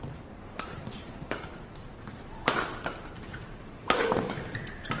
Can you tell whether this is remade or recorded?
remade